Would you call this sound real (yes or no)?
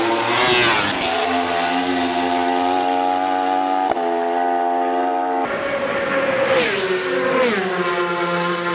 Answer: yes